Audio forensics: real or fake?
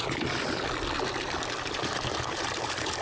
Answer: real